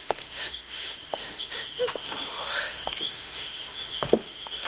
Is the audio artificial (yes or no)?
yes